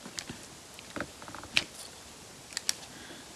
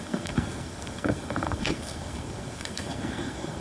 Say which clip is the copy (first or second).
second